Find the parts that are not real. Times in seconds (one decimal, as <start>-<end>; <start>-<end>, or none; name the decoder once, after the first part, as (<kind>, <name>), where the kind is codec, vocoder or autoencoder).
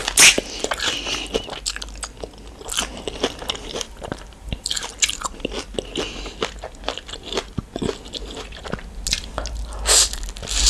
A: 3.6-4.9 (vocoder, BigVGAN v2)